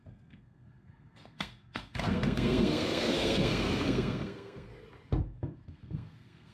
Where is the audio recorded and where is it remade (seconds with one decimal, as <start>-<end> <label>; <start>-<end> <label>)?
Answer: 0.0-4.7 remade; 4.7-5.2 recorded; 5.2-6.5 remade